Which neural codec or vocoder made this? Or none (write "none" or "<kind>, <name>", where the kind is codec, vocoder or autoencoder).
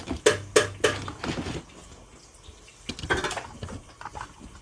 none